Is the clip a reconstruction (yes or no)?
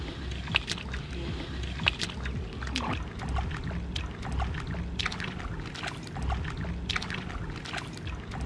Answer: no